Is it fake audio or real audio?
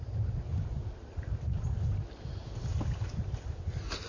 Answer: real